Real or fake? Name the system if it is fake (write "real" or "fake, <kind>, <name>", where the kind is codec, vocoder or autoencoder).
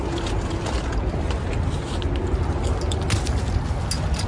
real